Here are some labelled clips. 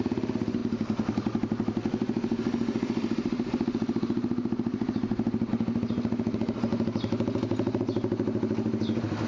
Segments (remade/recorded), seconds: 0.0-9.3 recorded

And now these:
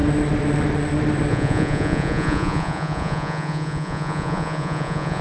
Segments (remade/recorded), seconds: 0.0-1.3 recorded; 1.3-5.2 remade